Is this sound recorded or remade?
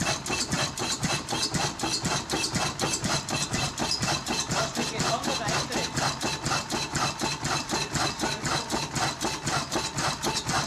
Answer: recorded